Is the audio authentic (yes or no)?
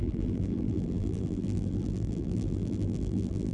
no